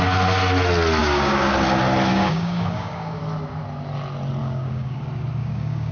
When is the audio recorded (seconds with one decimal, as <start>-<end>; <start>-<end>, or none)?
0.0-1.0; 1.5-2.1; 3.2-4.4; 5.0-5.4